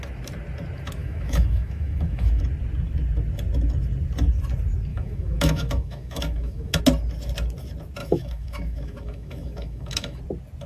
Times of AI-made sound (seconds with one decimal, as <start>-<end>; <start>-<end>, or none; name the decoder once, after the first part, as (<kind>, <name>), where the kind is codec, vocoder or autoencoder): 1.0-2.4 (autoencoder, DAC-VAE); 4.9-6.8; 8.0-10.2